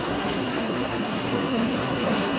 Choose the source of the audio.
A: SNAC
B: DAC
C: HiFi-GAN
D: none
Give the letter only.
A